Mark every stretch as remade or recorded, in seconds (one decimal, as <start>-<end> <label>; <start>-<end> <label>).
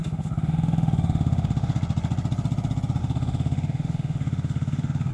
0.0-1.7 remade; 1.7-3.0 recorded; 3.0-5.1 remade